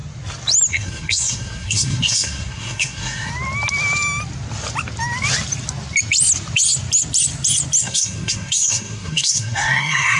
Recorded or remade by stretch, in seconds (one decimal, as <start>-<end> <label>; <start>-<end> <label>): 0.0-0.7 recorded; 0.7-3.3 remade; 3.3-7.8 recorded; 7.8-10.2 remade